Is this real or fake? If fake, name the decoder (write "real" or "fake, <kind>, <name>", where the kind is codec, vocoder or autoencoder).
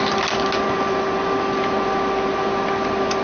real